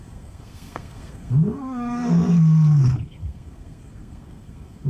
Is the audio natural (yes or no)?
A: no